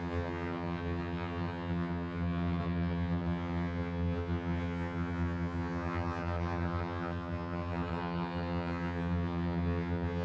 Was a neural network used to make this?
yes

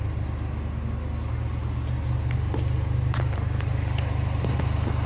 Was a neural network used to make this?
no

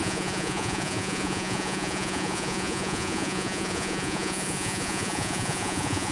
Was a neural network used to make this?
yes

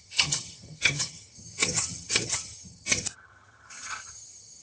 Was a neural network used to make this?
yes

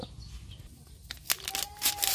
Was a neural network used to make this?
no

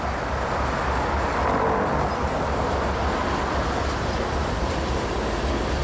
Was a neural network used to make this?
no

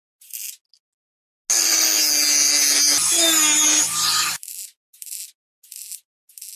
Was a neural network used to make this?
no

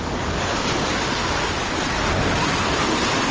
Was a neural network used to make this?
no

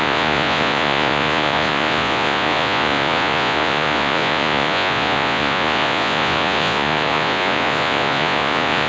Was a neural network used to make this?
yes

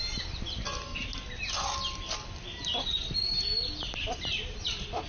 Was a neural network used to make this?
no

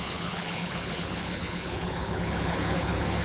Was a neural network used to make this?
yes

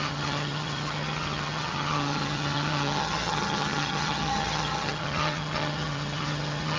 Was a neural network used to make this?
yes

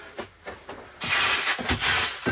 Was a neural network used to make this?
no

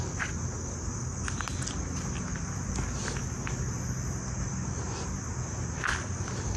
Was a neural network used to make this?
no